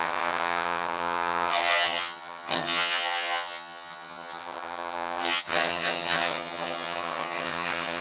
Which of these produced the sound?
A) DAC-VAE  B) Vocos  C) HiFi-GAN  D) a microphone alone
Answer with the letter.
C